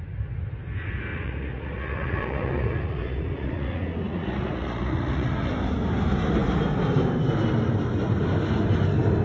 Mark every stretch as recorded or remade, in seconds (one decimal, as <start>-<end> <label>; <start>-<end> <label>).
0.0-1.1 recorded; 1.1-5.5 remade; 5.5-9.2 recorded